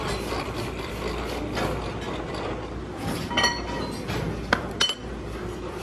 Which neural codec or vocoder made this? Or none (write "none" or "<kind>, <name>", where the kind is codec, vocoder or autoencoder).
none